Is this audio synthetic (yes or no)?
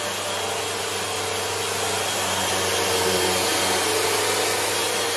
no